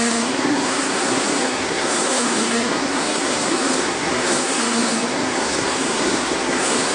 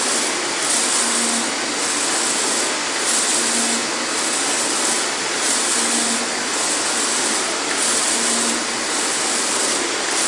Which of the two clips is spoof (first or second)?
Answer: first